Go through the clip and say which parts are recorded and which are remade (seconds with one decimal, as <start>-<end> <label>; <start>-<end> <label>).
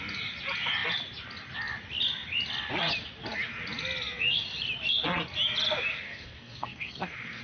0.0-5.9 recorded; 5.9-7.4 remade